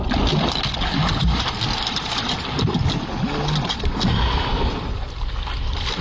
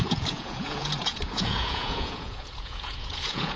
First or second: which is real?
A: first